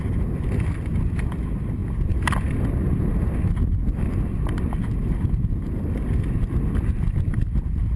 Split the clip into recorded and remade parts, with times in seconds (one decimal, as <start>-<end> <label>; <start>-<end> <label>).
0.0-8.0 recorded